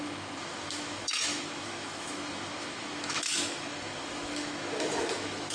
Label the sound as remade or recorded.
remade